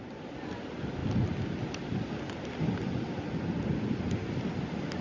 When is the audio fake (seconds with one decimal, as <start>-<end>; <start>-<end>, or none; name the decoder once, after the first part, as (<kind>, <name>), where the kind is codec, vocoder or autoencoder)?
none

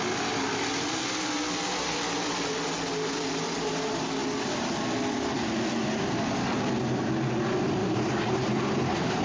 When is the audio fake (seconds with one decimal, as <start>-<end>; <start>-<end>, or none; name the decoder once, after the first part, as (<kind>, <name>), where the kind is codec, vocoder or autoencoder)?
7.8-9.2 (vocoder, BigVGAN v2)

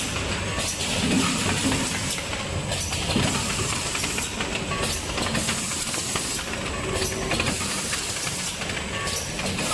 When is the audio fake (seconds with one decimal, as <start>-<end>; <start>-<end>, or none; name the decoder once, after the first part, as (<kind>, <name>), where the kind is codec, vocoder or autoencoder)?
none

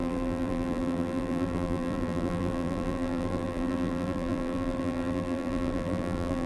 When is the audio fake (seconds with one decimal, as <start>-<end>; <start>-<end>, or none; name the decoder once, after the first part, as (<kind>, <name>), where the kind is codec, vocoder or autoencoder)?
0.0-6.5 (vocoder, BigVGAN v2)